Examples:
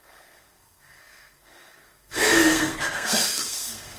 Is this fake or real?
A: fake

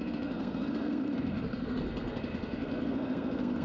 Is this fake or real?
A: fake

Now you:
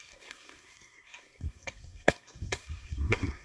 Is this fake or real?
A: fake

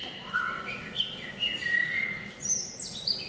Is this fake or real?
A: real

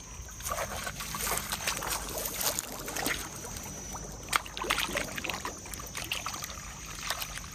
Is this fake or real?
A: real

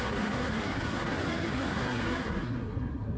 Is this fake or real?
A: fake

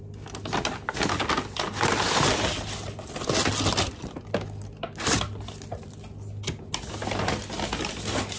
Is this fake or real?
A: real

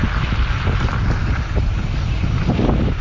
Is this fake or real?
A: real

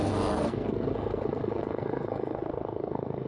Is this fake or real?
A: fake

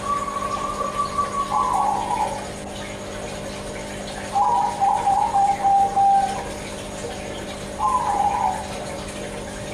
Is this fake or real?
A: real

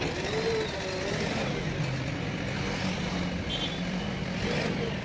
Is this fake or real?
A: real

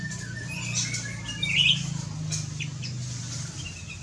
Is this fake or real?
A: real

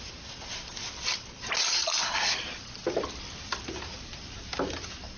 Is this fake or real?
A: real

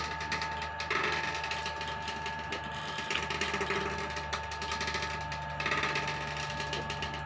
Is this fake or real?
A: real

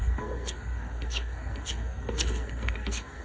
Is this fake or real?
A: fake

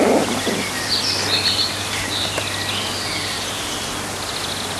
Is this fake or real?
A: real